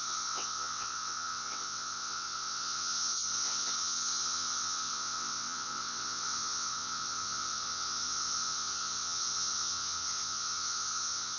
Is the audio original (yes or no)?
no